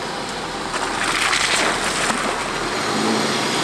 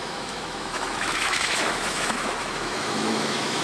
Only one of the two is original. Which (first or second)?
first